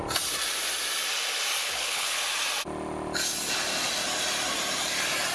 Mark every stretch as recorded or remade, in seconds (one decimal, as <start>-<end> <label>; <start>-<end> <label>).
0.0-1.6 recorded; 1.6-2.2 remade; 2.2-5.3 recorded